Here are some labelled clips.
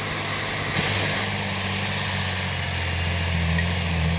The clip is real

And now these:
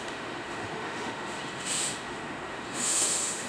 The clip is fake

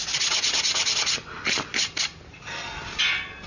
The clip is real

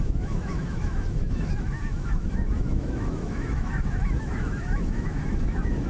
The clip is fake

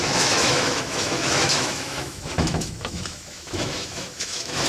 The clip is fake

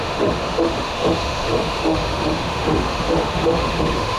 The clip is fake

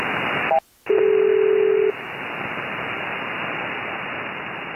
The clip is real